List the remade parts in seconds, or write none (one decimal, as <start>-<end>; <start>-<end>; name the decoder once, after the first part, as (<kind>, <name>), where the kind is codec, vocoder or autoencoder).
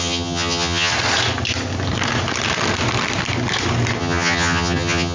0.0-0.9 (vocoder, HiFi-GAN); 4.0-5.1